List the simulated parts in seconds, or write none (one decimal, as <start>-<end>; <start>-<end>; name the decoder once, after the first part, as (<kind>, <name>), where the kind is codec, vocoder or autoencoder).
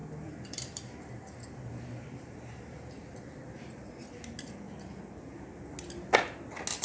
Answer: 0.0-3.0 (vocoder, BigVGAN v2)